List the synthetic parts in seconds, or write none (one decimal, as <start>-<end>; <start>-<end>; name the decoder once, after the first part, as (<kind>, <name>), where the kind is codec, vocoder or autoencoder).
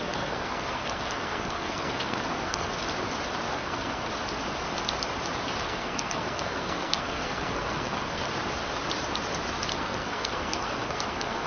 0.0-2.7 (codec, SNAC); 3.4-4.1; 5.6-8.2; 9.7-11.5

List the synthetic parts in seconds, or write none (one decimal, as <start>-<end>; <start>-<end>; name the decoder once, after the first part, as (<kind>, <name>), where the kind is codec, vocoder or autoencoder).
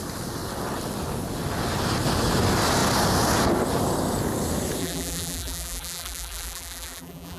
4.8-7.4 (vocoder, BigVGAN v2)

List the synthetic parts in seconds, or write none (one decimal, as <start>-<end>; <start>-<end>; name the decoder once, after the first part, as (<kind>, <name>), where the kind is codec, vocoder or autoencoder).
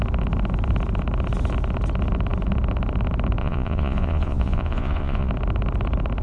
3.4-5.3 (vocoder, Vocos)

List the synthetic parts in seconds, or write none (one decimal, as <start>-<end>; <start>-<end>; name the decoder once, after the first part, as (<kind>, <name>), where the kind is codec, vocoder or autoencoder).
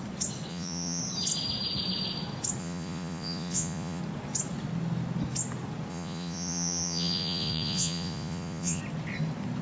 0.5-1.0 (vocoder, Vocos); 2.6-4.0; 5.9-8.8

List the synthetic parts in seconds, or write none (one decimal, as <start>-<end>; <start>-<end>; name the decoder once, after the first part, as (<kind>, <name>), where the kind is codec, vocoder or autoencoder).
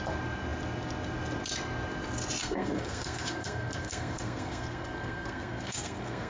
2.4-6.3 (codec, SNAC)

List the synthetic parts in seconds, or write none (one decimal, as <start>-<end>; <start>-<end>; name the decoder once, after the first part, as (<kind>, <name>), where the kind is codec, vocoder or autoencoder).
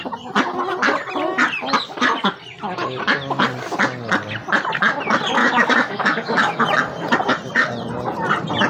5.4-6.6 (codec, DAC)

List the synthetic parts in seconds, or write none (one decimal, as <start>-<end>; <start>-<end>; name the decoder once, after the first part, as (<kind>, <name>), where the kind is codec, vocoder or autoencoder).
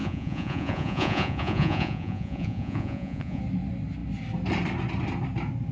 0.0-3.4 (vocoder, Vocos)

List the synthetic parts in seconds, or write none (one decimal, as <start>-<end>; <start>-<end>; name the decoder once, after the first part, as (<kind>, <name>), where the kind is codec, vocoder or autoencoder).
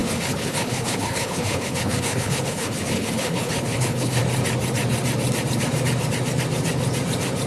0.0-4.2 (codec, HILCodec)